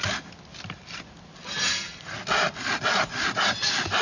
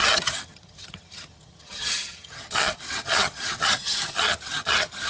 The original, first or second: first